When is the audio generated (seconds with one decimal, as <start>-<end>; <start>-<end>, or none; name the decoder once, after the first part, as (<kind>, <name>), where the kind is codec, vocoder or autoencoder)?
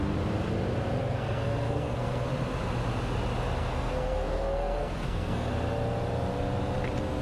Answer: 1.0-2.3 (codec, SNAC); 3.6-5.5